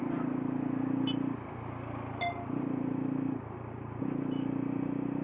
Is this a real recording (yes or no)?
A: yes